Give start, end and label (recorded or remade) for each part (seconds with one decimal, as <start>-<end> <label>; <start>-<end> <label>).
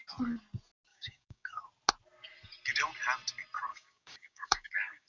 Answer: 0.0-0.9 recorded; 0.9-1.6 remade; 1.6-3.7 recorded; 3.7-5.1 remade